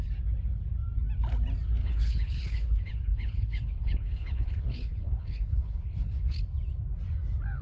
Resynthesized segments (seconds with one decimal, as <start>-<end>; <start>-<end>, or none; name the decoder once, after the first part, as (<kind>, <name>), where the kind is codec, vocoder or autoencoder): 1.8-6.4 (codec, HILCodec)